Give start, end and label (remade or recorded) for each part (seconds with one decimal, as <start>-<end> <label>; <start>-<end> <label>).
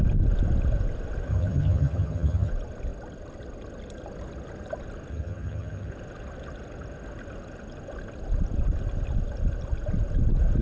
0.0-1.3 recorded; 1.3-2.5 remade; 2.5-5.1 recorded; 5.1-5.9 remade; 5.9-10.6 recorded